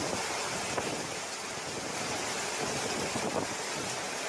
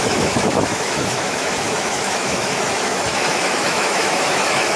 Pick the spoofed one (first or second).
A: second